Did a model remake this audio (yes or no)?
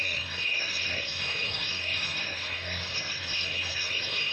yes